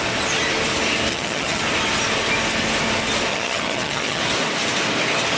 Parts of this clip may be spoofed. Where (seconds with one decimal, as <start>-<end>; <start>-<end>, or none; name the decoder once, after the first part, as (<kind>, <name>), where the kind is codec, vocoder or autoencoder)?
1.1-1.6 (vocoder, HiFi-GAN); 3.3-4.2